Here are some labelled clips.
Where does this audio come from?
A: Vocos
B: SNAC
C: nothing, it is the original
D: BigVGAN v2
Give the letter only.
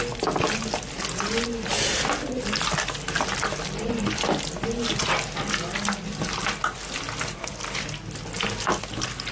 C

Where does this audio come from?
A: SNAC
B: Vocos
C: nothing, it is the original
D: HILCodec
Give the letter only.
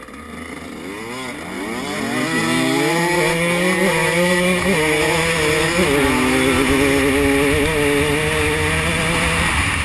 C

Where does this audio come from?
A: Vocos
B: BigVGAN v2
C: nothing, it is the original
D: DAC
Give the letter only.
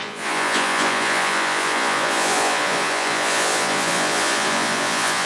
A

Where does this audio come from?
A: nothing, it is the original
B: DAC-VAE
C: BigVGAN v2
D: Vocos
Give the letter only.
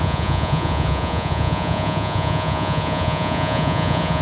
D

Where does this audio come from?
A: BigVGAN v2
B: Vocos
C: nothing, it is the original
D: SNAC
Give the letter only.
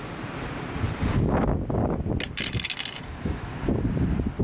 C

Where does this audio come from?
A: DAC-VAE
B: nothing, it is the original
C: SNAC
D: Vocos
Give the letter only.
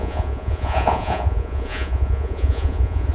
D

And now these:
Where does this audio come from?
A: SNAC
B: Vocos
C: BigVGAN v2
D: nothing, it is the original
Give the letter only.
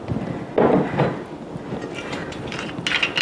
D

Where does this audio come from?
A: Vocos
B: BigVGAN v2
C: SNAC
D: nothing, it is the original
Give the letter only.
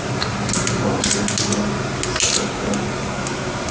D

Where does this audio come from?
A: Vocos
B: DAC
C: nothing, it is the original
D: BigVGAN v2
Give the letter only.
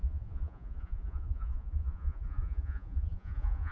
A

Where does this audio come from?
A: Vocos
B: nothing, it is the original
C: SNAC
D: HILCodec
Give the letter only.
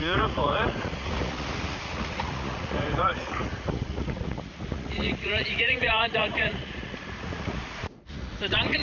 A